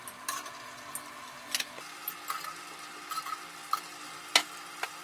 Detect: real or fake real